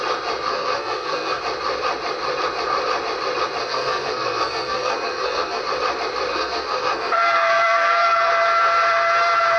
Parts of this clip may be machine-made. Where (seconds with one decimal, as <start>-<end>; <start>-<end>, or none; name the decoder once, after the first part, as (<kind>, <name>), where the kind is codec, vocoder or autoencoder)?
0.5-1.4 (codec, SNAC); 3.6-5.6; 6.3-8.3